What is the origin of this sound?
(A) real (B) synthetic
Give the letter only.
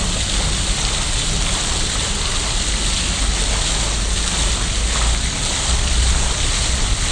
A